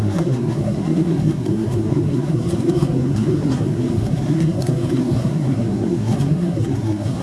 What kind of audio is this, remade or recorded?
remade